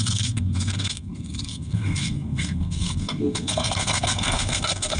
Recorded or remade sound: remade